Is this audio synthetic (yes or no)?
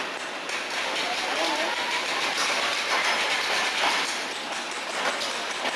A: no